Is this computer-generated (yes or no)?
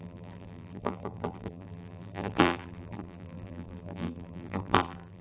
yes